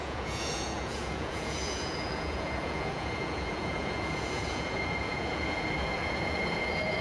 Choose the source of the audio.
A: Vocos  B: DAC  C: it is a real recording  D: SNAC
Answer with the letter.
A